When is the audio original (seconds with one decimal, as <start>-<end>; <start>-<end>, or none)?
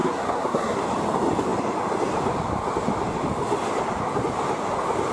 0.8-5.1